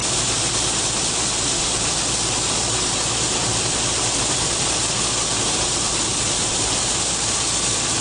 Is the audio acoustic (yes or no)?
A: no